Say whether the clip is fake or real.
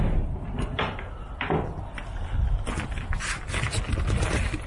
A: real